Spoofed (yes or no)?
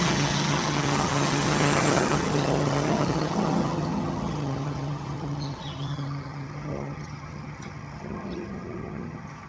yes